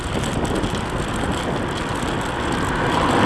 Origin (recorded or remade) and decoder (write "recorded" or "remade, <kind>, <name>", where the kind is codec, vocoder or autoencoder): recorded